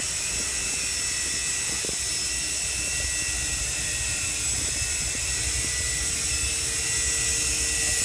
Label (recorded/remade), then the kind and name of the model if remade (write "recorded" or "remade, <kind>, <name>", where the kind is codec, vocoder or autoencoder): recorded